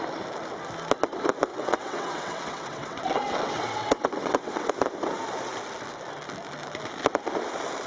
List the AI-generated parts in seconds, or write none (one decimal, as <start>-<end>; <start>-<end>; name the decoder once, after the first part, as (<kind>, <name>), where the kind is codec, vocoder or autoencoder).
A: 1.5-4.7 (vocoder, WaveNeXt)